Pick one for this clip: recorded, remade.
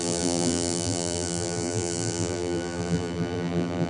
remade